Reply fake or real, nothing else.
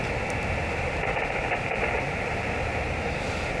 real